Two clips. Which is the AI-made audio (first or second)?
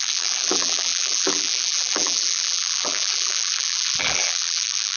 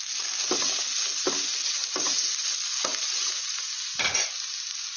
first